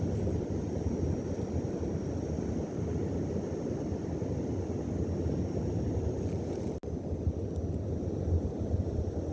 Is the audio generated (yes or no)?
no